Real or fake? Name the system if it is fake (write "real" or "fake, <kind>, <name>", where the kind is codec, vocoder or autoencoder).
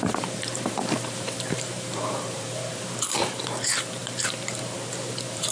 fake, vocoder, BigVGAN v2